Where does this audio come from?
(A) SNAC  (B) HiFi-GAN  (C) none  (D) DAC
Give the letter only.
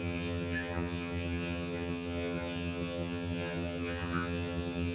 B